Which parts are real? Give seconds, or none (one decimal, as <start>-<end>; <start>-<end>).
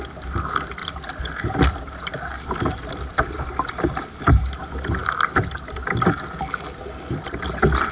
0.0-0.8; 4.3-7.9